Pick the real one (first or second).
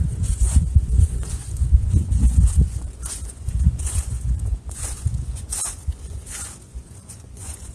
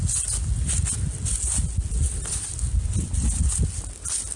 second